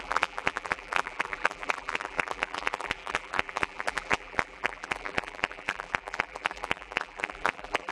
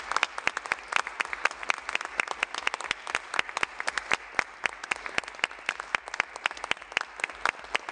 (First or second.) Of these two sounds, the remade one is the first